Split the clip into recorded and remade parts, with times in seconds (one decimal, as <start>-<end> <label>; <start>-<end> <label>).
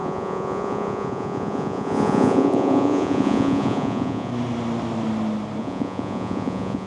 0.0-4.3 remade; 4.3-5.6 recorded; 5.6-6.9 remade